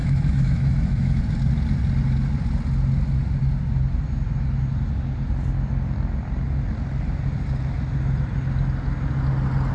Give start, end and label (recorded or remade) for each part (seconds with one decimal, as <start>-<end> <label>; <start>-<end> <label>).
0.0-1.2 remade; 1.2-9.7 recorded